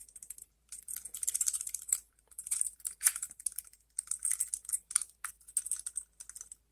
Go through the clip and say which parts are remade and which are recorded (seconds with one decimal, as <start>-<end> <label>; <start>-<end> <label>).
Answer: 0.0-4.0 remade; 4.0-4.7 recorded; 4.7-5.3 remade; 5.3-6.7 recorded

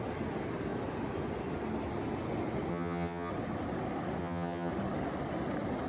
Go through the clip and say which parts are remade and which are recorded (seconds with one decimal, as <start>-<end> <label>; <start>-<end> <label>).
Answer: 0.0-2.7 recorded; 2.7-3.3 remade; 3.3-4.2 recorded; 4.2-4.7 remade; 4.7-5.9 recorded